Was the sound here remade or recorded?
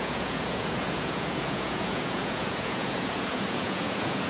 remade